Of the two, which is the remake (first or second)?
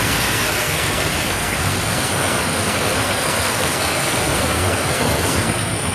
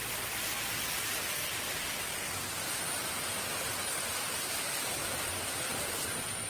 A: first